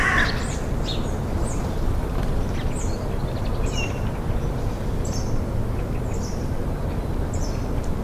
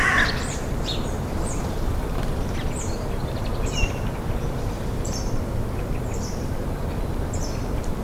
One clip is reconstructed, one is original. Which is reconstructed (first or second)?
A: second